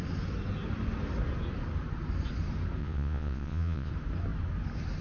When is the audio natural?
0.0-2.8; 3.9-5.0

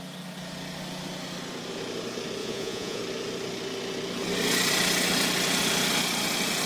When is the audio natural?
0.0-2.4; 3.0-6.7

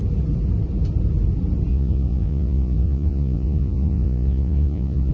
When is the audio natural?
0.0-1.7

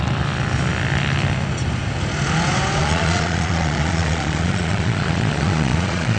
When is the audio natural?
0.0-2.8

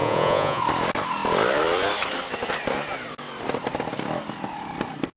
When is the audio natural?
0.6-5.2

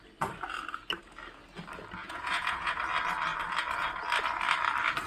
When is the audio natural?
0.0-2.0; 2.8-5.1

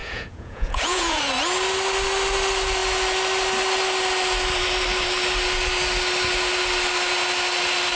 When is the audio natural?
1.2-8.0

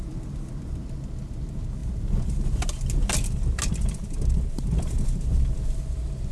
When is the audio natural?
0.0-6.3